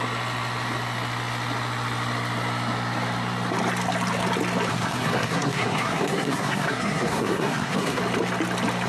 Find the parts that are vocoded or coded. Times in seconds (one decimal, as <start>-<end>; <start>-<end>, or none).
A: 4.7-8.0